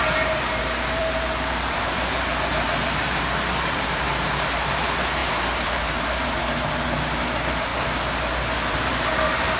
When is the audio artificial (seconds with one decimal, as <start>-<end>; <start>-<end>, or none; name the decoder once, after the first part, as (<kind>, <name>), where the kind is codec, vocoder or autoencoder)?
0.0-7.7 (vocoder, BigVGAN v2); 8.7-9.6